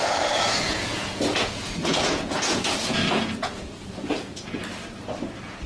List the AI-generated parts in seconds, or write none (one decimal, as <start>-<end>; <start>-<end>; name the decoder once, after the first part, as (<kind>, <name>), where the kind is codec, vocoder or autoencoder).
0.0-4.6 (vocoder, Vocos)